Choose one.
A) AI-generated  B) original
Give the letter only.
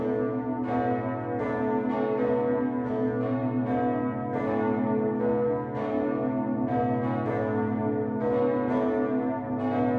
B